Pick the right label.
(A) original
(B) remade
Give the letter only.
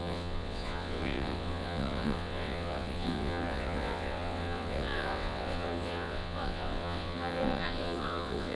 B